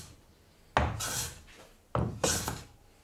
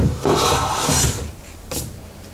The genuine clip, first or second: first